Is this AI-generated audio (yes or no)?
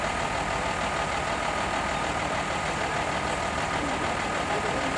no